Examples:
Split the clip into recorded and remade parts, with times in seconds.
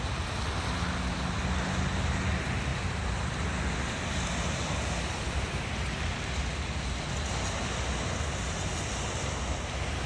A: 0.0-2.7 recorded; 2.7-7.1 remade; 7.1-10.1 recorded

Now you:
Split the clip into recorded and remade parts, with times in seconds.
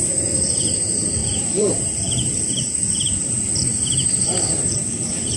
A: 0.0-5.4 remade